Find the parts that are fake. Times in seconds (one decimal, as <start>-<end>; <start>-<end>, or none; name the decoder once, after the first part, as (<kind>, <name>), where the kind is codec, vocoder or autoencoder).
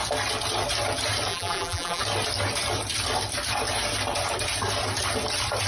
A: 1.3-2.0 (vocoder, BigVGAN v2)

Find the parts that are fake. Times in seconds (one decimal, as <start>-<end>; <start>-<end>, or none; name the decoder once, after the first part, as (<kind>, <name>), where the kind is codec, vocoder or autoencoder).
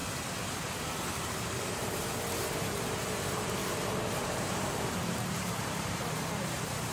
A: 1.2-3.6 (vocoder, BigVGAN v2); 4.1-6.9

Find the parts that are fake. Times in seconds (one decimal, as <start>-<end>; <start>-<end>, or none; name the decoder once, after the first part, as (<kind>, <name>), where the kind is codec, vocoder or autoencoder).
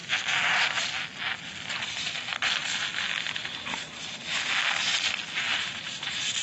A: none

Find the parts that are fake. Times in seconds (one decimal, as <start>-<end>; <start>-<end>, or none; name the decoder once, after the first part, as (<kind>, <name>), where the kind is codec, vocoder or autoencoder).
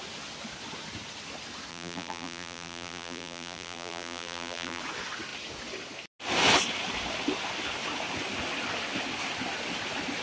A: 1.7-4.8 (vocoder, BigVGAN v2)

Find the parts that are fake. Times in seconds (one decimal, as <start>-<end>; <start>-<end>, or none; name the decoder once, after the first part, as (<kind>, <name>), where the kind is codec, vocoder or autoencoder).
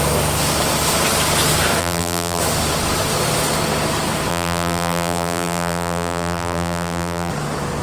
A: 1.8-2.4 (vocoder, BigVGAN v2); 4.3-7.3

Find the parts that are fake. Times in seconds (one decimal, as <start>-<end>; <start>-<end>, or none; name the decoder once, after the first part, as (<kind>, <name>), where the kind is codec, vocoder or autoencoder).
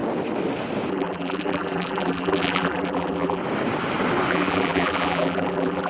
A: 0.9-3.4 (vocoder, BigVGAN v2); 4.3-5.9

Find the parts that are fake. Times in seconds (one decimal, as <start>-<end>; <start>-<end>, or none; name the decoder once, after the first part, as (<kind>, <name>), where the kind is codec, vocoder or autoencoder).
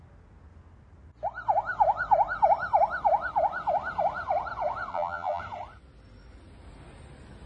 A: 4.9-5.4 (vocoder, BigVGAN v2)